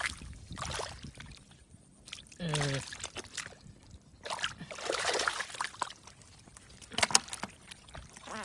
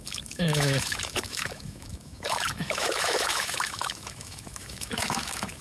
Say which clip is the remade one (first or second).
second